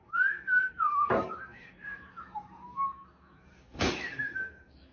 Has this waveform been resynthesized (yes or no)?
yes